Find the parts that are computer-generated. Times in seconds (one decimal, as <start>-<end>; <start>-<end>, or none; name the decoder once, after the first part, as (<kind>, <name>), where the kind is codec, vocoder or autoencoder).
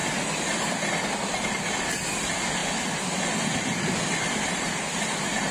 2.6-5.0 (vocoder, BigVGAN v2)